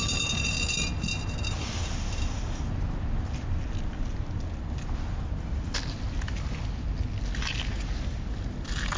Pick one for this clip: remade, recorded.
recorded